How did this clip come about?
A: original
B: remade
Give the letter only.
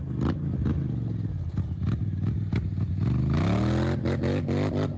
A